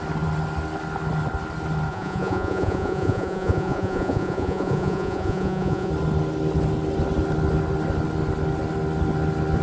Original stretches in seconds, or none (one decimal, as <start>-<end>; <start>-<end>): 0.0-1.9; 5.9-9.6